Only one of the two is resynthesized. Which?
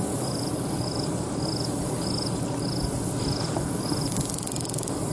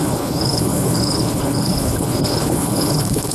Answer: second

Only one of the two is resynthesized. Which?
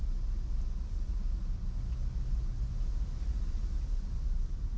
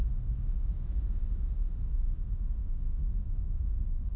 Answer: second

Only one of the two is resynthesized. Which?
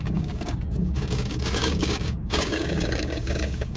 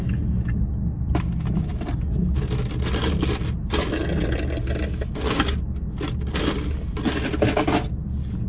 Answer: first